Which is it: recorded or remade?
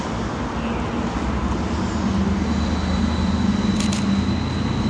recorded